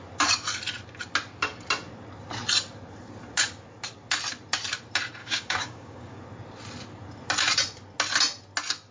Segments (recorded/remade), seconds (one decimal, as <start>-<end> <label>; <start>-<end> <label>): 0.0-5.2 recorded; 5.2-6.2 remade; 6.2-8.9 recorded